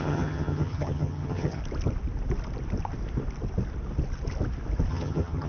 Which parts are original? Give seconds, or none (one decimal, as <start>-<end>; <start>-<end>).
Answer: 1.6-4.9